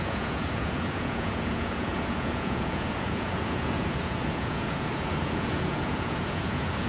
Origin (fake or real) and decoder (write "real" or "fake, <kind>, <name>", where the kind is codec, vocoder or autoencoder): fake, vocoder, Vocos